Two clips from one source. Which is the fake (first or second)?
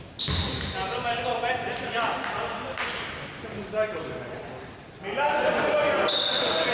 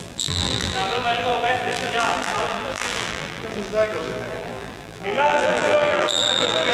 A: second